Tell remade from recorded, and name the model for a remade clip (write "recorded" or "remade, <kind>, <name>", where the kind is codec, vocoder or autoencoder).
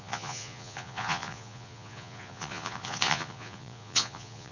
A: remade, vocoder, Vocos